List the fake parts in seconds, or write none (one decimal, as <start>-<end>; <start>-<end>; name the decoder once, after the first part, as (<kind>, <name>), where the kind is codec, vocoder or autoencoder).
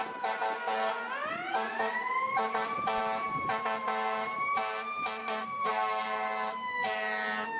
5.2-5.7 (codec, SNAC)